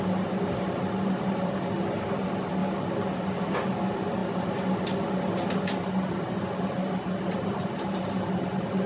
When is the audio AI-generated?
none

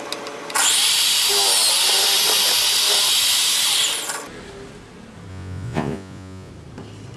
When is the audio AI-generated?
5.3-6.5 (vocoder, Vocos)

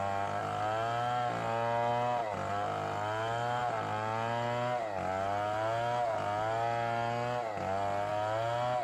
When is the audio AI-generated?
none

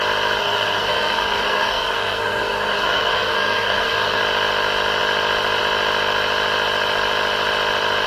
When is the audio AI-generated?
0.4-4.2 (codec, SNAC)

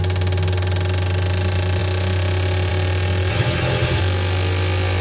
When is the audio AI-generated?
3.3-4.0 (vocoder, HiFi-GAN)

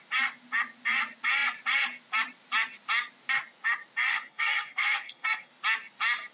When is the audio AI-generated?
4.1-5.5 (codec, SNAC)

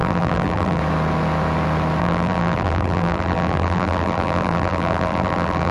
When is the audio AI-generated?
0.0-0.8 (vocoder, BigVGAN v2); 2.0-5.7

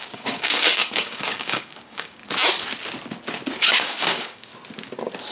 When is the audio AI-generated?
0.0-2.2 (codec, DAC); 3.6-4.5